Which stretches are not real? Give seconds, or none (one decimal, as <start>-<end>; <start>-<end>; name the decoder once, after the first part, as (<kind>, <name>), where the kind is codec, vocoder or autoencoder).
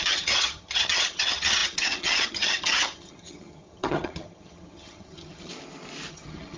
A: 0.0-5.5 (vocoder, HiFi-GAN); 6.1-6.6